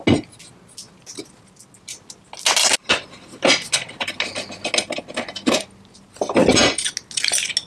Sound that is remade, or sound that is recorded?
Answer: recorded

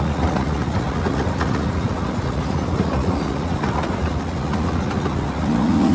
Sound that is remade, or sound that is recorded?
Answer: remade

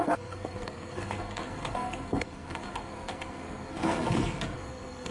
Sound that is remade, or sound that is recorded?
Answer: remade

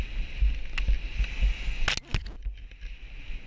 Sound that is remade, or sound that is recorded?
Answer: recorded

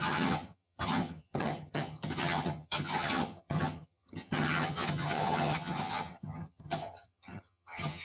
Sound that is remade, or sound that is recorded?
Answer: remade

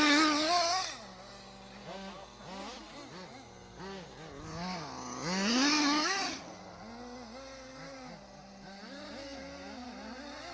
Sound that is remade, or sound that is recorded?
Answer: recorded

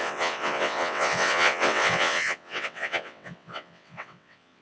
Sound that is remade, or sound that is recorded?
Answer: remade